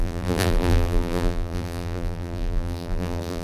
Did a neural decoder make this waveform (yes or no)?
yes